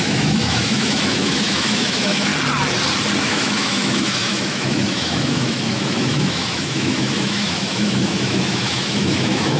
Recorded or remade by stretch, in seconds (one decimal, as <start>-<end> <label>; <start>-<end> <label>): 0.0-2.3 remade; 2.3-3.2 recorded; 3.2-9.6 remade